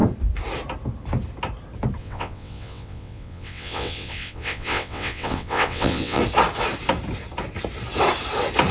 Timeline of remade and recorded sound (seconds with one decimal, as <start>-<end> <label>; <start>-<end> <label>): 0.0-2.0 recorded; 2.0-6.2 remade; 6.2-8.7 recorded